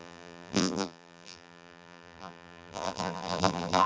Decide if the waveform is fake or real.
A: fake